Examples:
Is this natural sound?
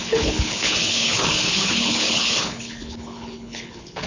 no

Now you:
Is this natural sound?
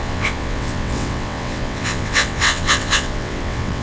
no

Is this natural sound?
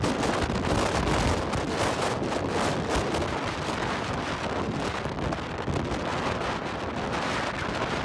yes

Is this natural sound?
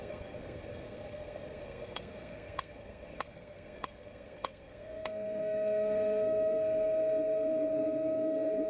no